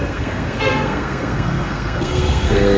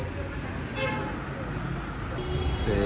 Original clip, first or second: second